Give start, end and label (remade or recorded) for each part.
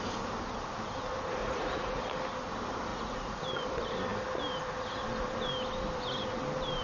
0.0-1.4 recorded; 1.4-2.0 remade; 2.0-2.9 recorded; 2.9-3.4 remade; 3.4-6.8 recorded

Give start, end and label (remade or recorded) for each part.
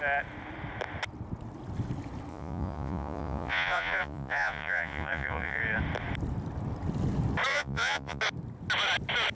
0.0-2.3 recorded; 2.3-5.6 remade; 5.6-7.5 recorded; 7.5-8.2 remade; 8.2-9.3 recorded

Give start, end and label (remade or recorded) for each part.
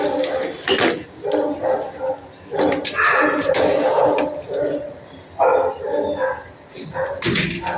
0.0-7.8 recorded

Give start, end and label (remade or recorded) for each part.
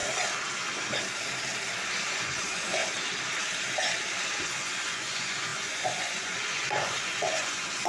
0.0-2.1 recorded; 2.1-2.8 remade; 2.8-4.4 recorded; 4.4-7.9 remade